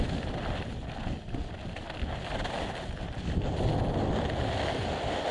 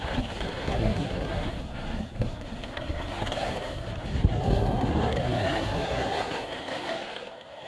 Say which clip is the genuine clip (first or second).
first